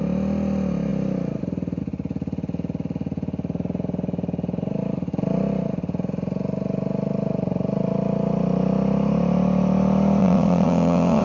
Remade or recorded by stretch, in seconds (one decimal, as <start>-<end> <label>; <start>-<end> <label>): 0.0-10.2 recorded; 10.2-11.2 remade